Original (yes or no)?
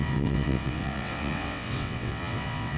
no